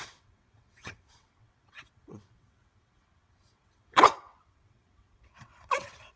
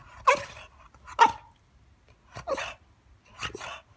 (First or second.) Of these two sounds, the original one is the second